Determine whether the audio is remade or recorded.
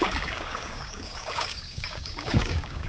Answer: remade